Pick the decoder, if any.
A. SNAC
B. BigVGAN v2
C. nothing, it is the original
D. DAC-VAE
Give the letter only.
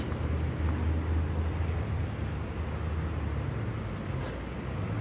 C